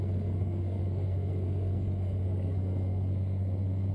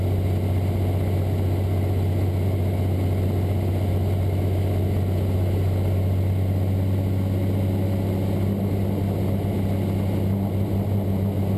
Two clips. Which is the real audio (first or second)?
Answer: second